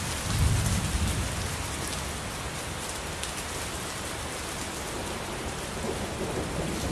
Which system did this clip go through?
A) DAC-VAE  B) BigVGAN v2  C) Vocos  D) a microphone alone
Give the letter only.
D